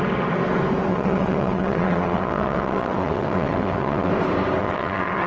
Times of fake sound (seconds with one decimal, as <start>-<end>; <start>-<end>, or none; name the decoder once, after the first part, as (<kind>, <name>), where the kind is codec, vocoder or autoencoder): 0.9-4.1 (vocoder, WaveNeXt); 4.6-5.3